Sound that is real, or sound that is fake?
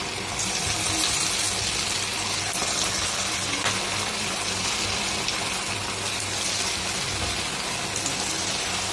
real